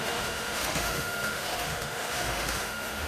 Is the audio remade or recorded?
remade